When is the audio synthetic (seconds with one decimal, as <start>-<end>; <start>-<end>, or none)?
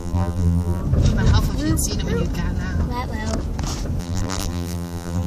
0.0-0.8; 4.0-5.3